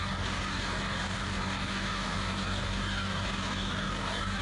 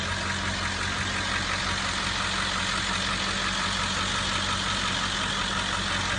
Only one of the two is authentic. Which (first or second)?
second